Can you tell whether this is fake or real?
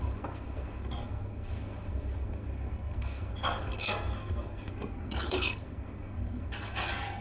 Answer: fake